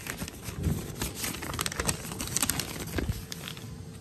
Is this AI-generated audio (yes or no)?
no